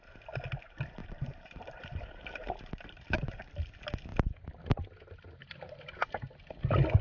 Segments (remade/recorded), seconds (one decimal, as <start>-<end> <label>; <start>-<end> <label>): 0.0-1.0 recorded; 1.0-3.5 remade; 3.5-7.0 recorded